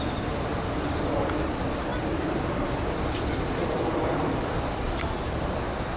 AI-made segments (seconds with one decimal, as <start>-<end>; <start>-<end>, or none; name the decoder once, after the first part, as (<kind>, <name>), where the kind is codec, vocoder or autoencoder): none